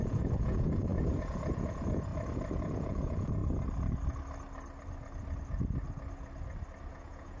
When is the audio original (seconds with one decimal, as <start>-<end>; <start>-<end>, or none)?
2.1-2.6; 3.4-6.9

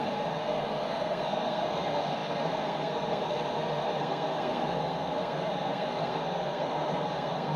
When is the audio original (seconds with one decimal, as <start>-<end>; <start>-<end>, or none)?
none